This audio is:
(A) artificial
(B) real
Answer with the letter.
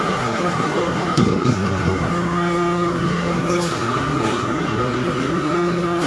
A